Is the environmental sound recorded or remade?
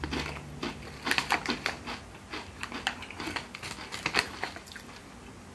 recorded